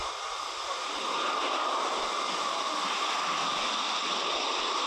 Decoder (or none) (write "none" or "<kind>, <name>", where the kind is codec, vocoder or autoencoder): none